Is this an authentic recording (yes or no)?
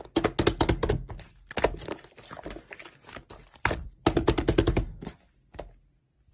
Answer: yes